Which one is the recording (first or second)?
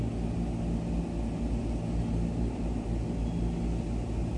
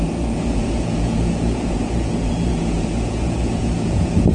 first